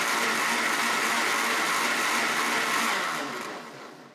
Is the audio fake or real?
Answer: real